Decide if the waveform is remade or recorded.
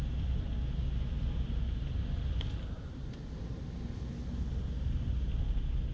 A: recorded